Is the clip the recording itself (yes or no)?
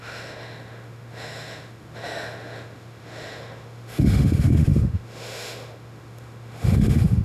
no